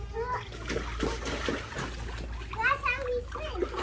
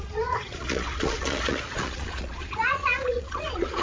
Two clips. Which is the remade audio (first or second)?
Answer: second